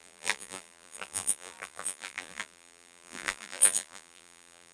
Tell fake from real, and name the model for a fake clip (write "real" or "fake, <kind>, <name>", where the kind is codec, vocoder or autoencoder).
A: fake, vocoder, BigVGAN v2